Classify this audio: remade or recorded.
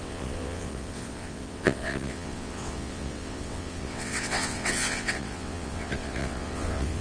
remade